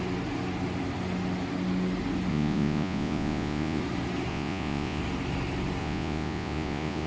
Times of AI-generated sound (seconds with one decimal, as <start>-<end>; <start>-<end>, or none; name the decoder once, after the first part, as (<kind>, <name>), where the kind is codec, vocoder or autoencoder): 2.3-3.8 (vocoder, Vocos); 4.3-5.0; 5.8-7.1